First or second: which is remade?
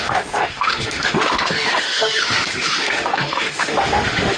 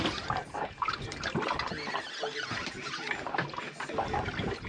first